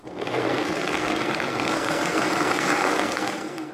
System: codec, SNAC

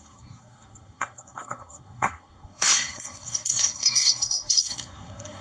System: codec, SNAC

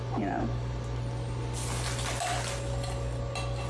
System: none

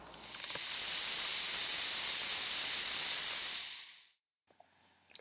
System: none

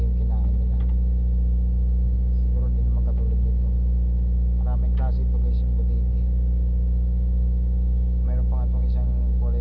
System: none